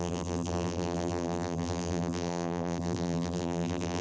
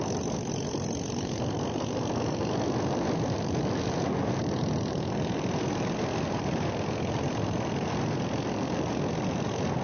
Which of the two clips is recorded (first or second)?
second